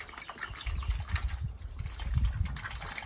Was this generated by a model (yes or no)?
no